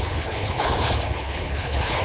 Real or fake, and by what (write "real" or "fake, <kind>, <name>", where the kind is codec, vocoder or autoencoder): fake, codec, HILCodec